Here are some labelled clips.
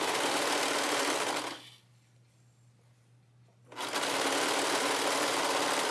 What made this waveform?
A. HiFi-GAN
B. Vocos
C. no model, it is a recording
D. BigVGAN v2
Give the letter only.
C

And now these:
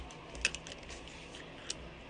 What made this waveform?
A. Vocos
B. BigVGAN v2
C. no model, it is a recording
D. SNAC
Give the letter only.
C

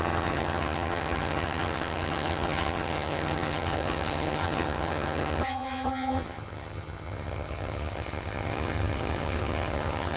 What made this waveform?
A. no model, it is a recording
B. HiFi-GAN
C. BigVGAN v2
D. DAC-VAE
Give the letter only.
B